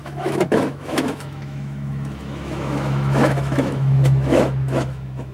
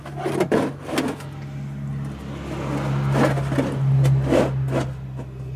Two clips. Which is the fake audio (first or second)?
first